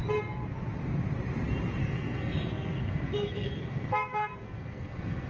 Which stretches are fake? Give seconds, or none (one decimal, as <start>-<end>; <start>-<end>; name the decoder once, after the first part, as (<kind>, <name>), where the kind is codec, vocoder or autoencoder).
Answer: 1.8-5.3 (codec, SNAC)